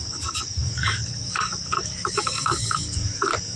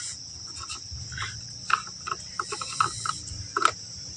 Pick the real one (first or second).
second